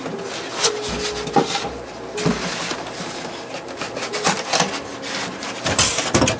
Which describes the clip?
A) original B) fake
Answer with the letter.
A